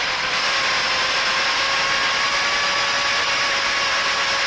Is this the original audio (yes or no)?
yes